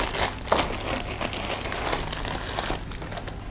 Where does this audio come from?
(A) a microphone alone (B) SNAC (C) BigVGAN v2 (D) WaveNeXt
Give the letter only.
A